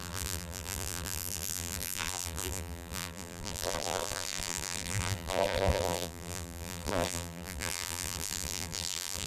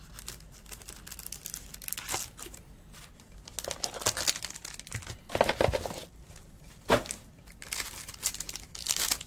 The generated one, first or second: first